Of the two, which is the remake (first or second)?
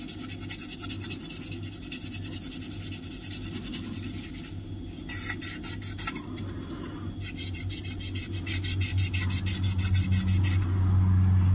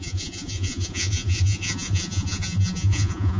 second